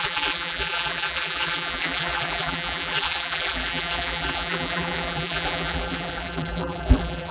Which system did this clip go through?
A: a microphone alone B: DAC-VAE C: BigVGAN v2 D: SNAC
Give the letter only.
C